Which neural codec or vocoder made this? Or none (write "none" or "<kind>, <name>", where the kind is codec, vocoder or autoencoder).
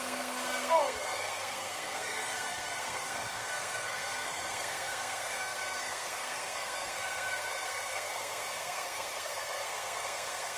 codec, SNAC